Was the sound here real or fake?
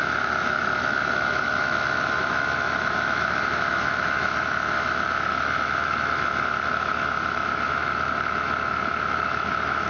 fake